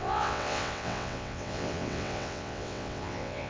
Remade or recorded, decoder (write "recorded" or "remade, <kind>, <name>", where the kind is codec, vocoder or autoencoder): remade, vocoder, WaveNeXt